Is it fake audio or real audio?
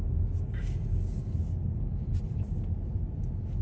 real